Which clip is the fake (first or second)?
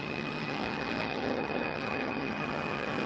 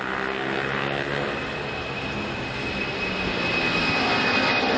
first